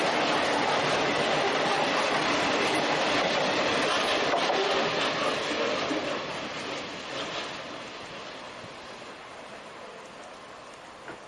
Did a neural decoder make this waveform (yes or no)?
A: no